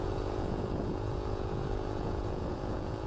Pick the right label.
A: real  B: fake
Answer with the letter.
B